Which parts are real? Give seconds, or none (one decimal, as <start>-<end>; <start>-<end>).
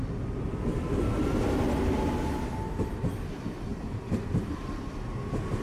0.0-3.7; 4.9-5.6